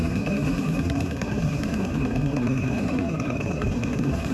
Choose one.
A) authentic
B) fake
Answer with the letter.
B